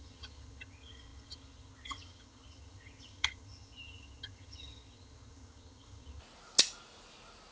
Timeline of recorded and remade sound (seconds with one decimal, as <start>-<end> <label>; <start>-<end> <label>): 0.0-6.2 remade; 6.2-7.5 recorded